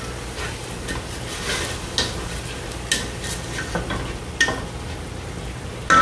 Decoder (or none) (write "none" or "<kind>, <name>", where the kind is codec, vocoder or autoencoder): none